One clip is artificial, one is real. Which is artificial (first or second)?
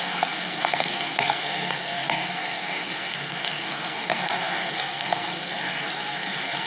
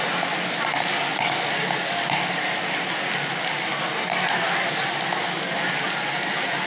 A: first